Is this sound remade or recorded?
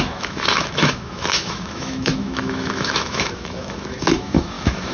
remade